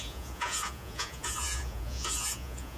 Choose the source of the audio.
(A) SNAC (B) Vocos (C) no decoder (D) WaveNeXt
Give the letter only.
B